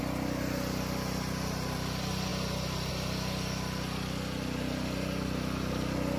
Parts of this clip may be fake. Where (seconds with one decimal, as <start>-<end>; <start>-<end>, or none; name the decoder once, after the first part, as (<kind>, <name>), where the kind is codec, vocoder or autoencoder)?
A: none